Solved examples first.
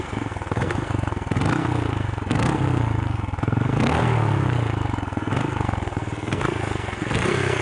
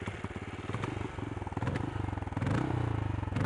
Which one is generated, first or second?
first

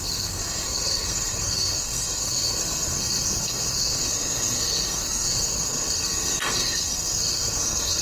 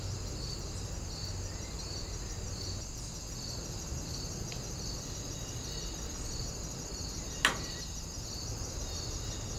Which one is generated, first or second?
first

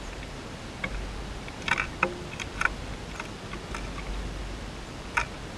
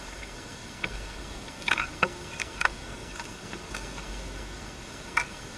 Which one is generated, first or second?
second